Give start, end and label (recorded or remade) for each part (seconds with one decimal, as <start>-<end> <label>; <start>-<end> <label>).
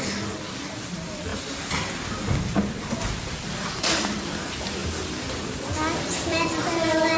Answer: 0.0-1.3 remade; 1.3-2.6 recorded; 2.6-4.8 remade; 4.8-6.0 recorded; 6.0-7.2 remade